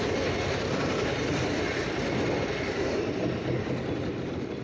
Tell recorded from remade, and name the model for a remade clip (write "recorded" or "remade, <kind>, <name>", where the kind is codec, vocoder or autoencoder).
recorded